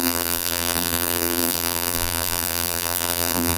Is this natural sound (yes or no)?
no